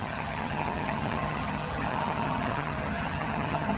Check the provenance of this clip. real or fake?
fake